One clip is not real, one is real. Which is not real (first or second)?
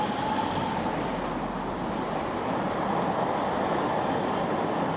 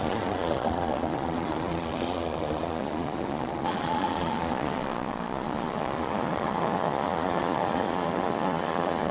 second